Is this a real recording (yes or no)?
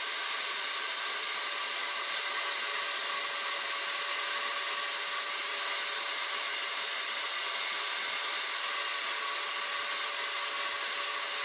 yes